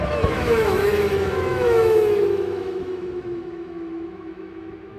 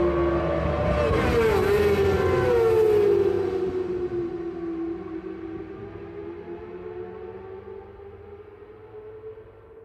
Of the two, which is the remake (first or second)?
first